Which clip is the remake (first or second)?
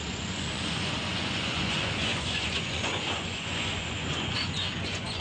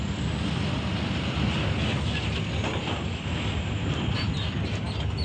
first